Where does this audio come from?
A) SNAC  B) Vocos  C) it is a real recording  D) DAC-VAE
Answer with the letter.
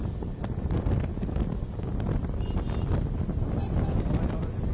C